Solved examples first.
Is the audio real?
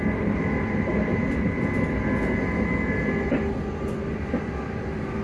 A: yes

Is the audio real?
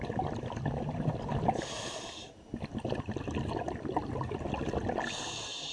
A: yes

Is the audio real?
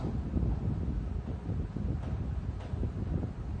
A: yes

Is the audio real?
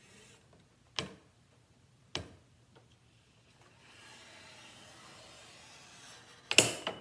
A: yes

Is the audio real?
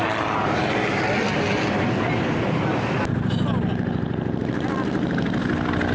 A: yes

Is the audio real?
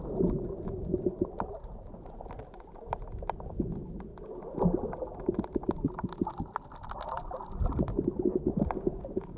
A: yes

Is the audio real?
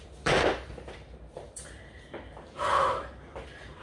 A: no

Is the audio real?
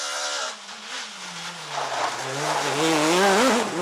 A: yes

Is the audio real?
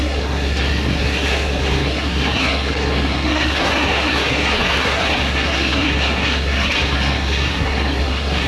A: no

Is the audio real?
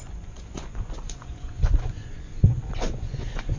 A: no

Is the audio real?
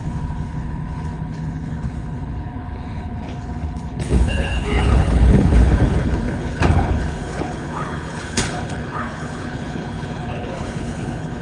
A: no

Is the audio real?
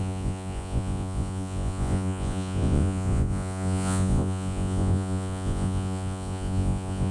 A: no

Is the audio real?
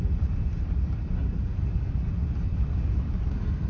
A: yes